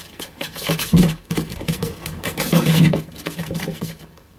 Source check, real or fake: fake